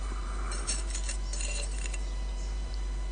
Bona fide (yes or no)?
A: no